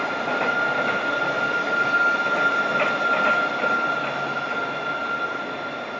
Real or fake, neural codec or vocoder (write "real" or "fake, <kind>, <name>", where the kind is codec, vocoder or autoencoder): real